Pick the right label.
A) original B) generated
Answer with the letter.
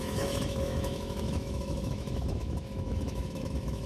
B